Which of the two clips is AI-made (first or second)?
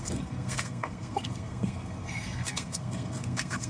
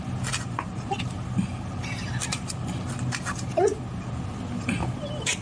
first